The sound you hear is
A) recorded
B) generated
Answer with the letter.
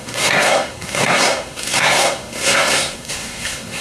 B